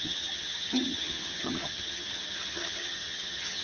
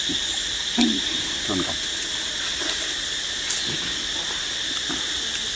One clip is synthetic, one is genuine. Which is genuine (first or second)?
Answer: second